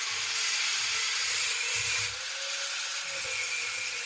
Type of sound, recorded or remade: recorded